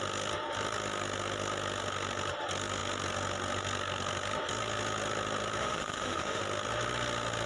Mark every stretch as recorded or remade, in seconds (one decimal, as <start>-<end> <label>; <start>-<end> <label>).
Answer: 0.0-5.6 recorded; 5.6-6.4 remade; 6.4-7.5 recorded